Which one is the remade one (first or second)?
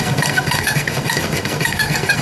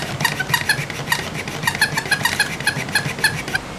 first